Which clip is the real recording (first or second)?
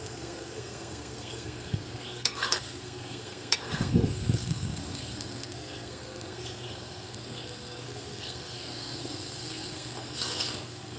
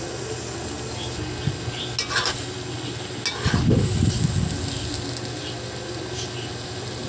second